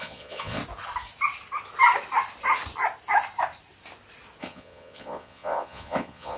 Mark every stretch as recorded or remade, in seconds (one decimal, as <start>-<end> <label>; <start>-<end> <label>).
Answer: 0.0-0.6 remade; 0.6-4.4 recorded; 4.4-6.4 remade